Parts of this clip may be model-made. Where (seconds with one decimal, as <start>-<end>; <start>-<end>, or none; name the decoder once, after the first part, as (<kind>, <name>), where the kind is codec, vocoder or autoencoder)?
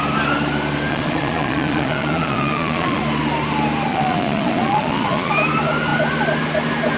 0.9-3.0 (vocoder, Vocos); 3.9-5.3